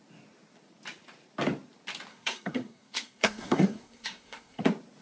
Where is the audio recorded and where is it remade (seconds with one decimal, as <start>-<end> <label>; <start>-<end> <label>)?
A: 0.0-2.1 recorded; 2.1-4.6 remade; 4.6-5.0 recorded